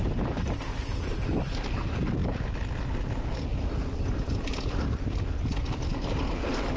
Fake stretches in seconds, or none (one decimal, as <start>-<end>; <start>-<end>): none